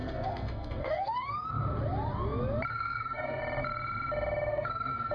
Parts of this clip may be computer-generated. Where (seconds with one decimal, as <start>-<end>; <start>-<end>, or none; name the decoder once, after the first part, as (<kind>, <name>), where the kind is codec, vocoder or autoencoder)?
0.0-1.5 (codec, SNAC); 2.7-3.4; 4.5-5.1

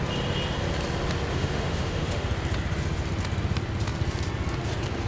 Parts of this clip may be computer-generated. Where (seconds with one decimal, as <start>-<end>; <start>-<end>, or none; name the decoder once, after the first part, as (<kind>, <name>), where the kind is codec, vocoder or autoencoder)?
1.3-2.3 (autoencoder, DAC-VAE)

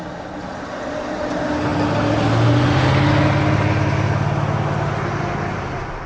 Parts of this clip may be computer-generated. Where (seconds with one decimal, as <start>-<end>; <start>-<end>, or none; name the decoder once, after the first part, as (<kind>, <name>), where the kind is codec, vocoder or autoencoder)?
none

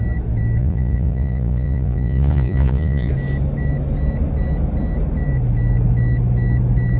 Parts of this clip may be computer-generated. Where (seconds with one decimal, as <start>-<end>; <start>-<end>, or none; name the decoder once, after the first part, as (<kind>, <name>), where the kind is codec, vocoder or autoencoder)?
0.6-3.1 (vocoder, Vocos)